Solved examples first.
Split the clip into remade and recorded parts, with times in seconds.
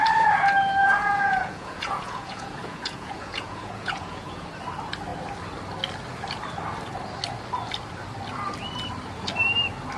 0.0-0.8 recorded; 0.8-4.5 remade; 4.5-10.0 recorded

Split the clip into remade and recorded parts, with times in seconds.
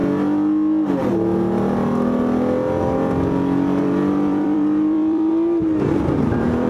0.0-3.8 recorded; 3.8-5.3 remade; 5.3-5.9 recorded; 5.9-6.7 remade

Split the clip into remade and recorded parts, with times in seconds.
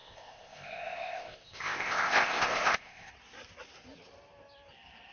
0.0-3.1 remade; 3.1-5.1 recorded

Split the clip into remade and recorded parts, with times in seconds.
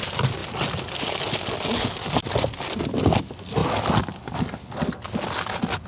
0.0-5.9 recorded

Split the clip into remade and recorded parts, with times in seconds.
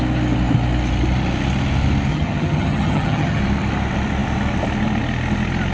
0.0-2.1 recorded; 2.1-3.4 remade; 3.4-5.7 recorded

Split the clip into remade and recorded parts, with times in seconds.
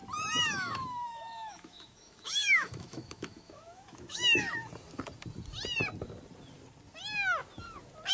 0.0-0.4 recorded; 0.4-4.5 remade; 4.5-8.1 recorded